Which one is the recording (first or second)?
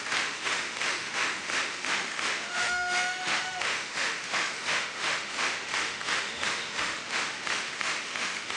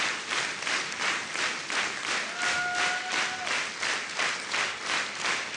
second